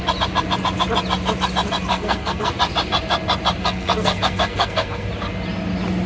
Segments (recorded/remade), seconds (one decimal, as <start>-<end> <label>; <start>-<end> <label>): 0.0-1.9 recorded; 1.9-2.5 remade; 2.5-3.6 recorded; 3.6-5.1 remade; 5.1-6.1 recorded